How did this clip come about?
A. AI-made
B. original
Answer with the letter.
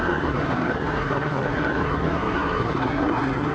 A